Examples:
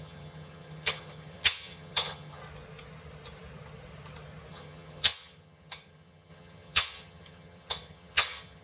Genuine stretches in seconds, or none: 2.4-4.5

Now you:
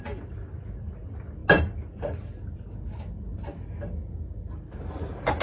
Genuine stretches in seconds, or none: 0.0-5.4